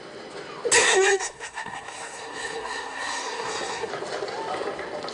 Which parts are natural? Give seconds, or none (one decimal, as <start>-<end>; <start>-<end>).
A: 0.0-0.8; 3.9-5.1